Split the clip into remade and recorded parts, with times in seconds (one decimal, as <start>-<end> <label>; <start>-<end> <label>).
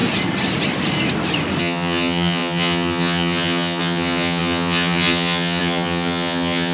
0.0-1.6 recorded; 1.6-6.7 remade